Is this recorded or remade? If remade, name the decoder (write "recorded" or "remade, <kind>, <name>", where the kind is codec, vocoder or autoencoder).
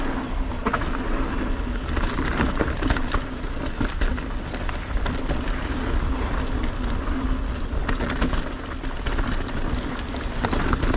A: recorded